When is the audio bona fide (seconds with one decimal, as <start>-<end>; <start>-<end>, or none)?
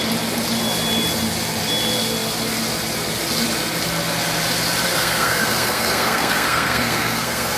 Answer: 0.0-4.9